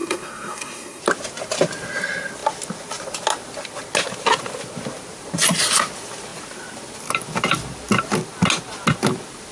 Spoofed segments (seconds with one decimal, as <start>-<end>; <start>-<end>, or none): 0.0-1.0